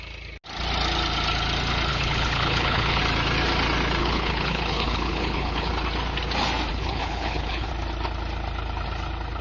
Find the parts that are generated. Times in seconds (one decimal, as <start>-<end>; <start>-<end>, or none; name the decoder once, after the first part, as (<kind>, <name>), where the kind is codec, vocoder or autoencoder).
1.9-3.0 (codec, HILCodec); 4.0-5.7; 6.7-7.7